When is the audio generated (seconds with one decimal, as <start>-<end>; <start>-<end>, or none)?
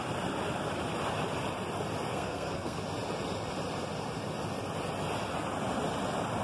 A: 2.1-2.8